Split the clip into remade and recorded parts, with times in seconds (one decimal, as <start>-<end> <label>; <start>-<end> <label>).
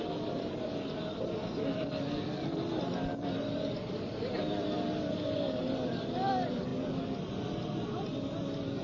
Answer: 0.0-8.8 recorded